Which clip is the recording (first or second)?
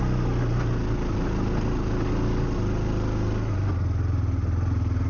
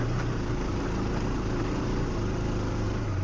first